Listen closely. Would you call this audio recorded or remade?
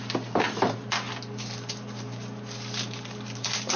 recorded